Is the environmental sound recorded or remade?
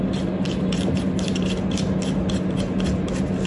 recorded